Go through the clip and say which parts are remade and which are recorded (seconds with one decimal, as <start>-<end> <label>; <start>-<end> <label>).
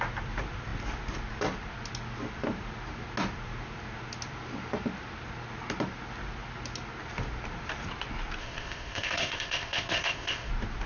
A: 0.0-8.4 recorded; 8.4-10.5 remade; 10.5-10.9 recorded